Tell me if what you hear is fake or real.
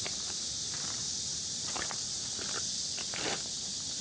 fake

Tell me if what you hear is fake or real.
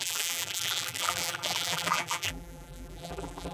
fake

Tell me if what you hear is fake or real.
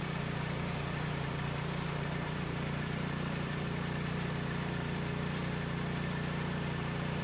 fake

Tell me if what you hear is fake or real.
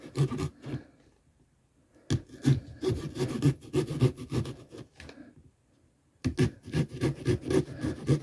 real